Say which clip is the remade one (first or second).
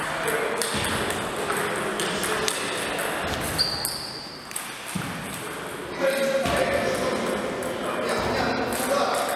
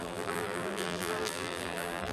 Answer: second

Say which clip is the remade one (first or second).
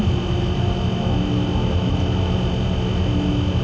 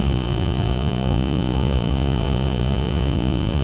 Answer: second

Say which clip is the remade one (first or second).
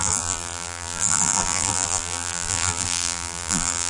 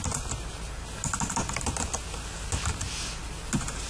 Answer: first